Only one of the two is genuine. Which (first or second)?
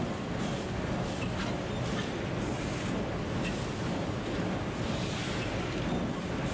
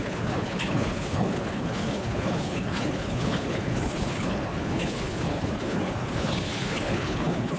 first